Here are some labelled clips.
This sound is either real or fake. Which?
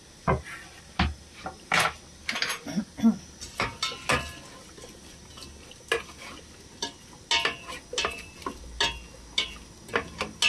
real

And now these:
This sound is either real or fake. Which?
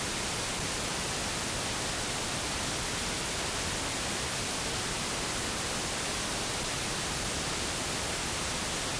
real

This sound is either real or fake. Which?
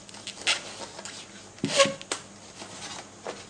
real